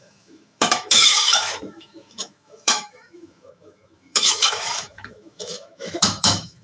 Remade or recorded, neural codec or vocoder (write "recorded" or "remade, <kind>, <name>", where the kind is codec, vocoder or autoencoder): remade, autoencoder, DAC-VAE